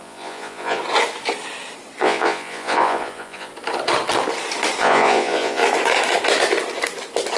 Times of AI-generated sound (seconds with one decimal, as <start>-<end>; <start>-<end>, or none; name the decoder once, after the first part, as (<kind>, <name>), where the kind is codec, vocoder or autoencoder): 0.0-0.8 (vocoder, Vocos); 2.0-3.5; 4.8-5.6